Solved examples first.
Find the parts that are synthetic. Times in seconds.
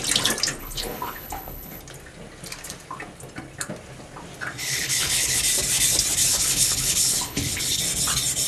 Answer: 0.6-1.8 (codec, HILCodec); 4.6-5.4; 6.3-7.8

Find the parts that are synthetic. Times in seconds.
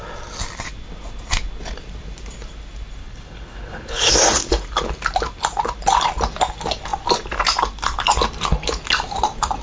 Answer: 3.0-4.1 (codec, HILCodec)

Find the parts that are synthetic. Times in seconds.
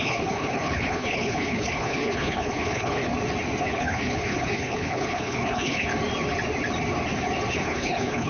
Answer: 0.0-3.1 (codec, HILCodec); 3.6-5.9; 7.5-8.3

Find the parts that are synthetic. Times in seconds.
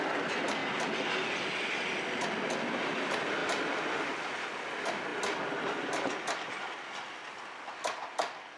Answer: none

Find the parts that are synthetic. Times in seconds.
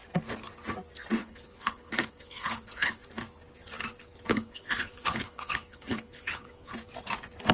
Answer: 1.2-3.0 (codec, HILCodec); 4.3-6.7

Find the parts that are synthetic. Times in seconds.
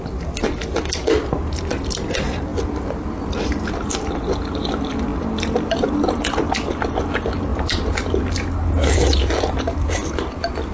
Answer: none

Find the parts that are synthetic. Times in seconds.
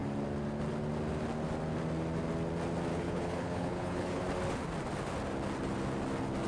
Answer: 2.9-4.2 (codec, HILCodec)